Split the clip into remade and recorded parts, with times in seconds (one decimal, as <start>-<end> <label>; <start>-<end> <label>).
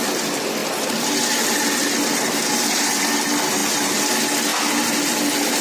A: 0.0-5.6 recorded